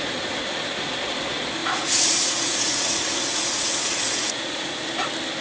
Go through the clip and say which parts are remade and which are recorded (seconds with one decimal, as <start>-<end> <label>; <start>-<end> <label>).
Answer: 0.0-1.6 recorded; 1.6-4.8 remade; 4.8-5.4 recorded